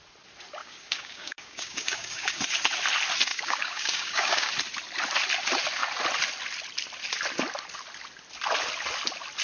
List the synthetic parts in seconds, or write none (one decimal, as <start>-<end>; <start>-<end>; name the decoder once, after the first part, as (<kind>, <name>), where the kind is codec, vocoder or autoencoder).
0.6-2.4 (codec, DAC); 3.3-4.5